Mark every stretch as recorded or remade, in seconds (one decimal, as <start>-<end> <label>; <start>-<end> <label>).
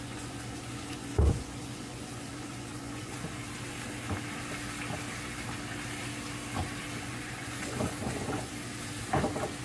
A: 0.0-3.4 remade; 3.4-7.0 recorded; 7.0-8.5 remade; 8.5-9.6 recorded